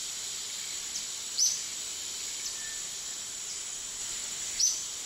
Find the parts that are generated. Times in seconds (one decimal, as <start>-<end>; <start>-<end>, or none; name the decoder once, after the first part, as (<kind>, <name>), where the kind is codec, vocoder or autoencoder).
1.0-1.7 (vocoder, BigVGAN v2); 2.3-5.1